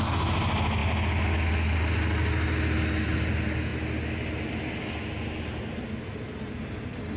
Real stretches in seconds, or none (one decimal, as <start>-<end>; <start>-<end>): 0.0-7.2